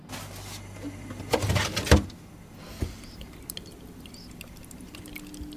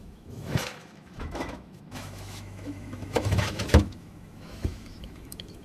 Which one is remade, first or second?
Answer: second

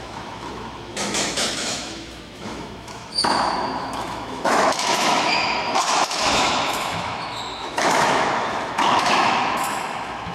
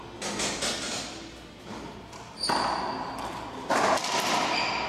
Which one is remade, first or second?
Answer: first